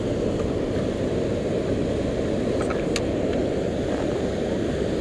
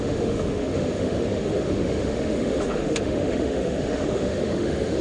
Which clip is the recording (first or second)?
first